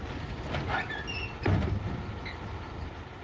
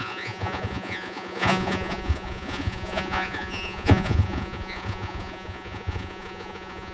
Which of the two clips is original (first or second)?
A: first